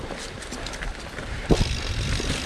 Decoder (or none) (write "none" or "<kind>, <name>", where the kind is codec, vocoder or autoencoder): none